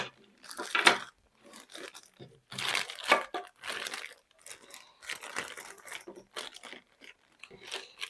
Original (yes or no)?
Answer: no